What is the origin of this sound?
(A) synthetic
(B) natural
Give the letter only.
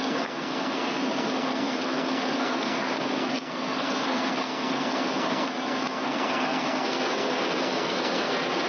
A